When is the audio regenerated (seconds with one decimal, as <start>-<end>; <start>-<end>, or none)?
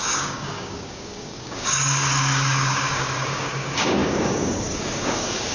0.0-5.5